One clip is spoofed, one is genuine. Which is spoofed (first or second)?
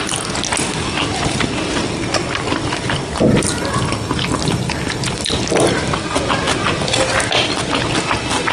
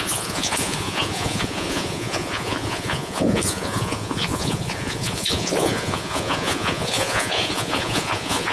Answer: second